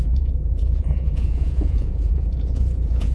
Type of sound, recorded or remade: remade